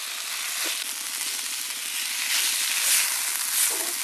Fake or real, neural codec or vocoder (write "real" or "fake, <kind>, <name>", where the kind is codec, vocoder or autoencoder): real